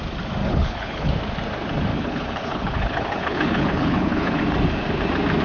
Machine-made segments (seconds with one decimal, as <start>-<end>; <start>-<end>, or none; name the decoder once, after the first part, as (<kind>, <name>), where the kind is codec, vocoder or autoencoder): 0.4-1.1 (codec, HILCodec); 1.9-4.4